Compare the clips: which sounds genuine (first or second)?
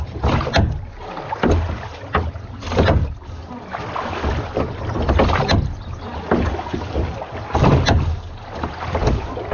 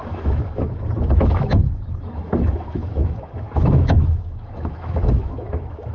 first